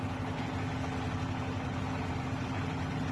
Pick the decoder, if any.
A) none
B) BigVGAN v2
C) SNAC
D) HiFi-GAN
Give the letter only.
A